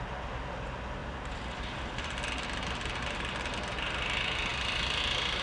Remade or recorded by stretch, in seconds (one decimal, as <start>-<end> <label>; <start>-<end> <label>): 0.0-1.0 recorded; 1.0-2.1 remade; 2.1-4.5 recorded; 4.5-5.0 remade; 5.0-5.4 recorded